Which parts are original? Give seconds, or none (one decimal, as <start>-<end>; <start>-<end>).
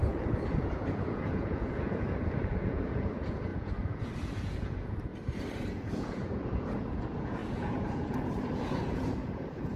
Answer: 5.1-5.6